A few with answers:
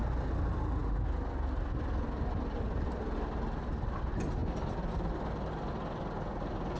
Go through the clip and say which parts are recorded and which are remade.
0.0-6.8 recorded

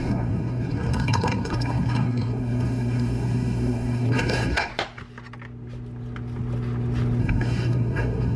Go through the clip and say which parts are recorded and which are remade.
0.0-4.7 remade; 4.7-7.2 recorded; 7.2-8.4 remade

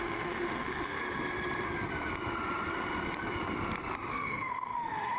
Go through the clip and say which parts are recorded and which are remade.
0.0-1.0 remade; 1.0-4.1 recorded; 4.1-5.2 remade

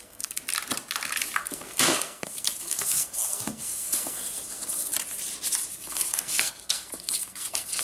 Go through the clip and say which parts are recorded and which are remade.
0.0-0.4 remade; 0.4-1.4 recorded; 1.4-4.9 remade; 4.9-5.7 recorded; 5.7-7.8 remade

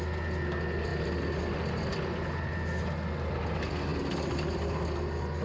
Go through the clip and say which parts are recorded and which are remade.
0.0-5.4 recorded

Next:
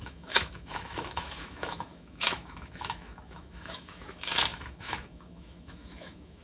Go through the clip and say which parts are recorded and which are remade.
0.0-6.4 remade

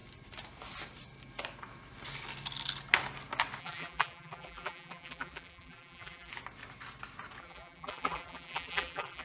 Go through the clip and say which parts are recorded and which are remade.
0.0-3.6 recorded; 3.6-6.3 remade; 6.3-7.4 recorded; 7.4-9.2 remade

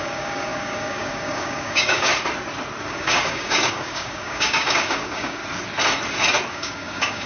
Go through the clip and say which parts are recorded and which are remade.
0.0-2.1 remade; 2.1-2.8 recorded; 2.8-5.4 remade; 5.4-6.5 recorded; 6.5-7.3 remade